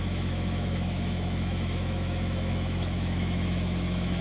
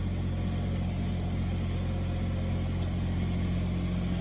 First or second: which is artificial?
first